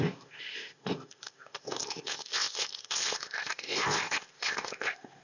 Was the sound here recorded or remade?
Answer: remade